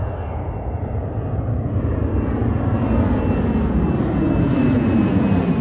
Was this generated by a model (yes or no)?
no